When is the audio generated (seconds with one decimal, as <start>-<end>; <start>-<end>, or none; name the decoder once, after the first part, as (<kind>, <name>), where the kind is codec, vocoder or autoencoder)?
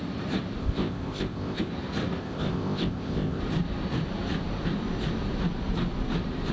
0.6-1.7 (codec, ZipCodec); 2.2-3.4